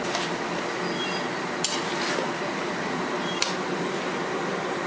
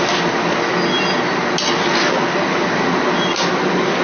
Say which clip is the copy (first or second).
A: first